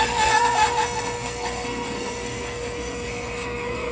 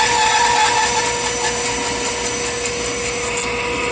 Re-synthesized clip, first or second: first